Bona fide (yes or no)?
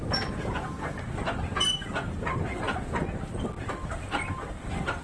yes